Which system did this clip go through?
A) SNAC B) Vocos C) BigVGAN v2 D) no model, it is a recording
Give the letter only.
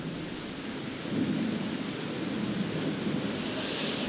D